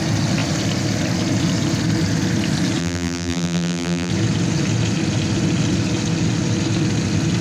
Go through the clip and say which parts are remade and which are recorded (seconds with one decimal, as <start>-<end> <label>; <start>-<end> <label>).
0.0-2.8 recorded; 2.8-4.1 remade; 4.1-7.4 recorded